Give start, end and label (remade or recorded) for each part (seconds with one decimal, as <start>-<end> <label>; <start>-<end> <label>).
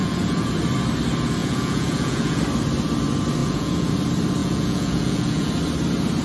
0.0-0.5 remade; 0.5-1.4 recorded; 1.4-2.4 remade; 2.4-3.4 recorded; 3.4-3.9 remade; 3.9-4.4 recorded; 4.4-5.5 remade; 5.5-6.2 recorded